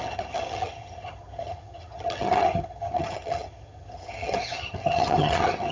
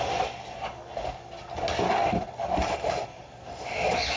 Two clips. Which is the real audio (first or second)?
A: second